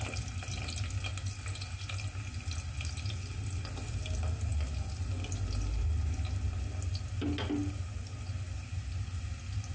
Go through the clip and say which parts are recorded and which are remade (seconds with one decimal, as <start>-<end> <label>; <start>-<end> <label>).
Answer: 0.0-9.7 recorded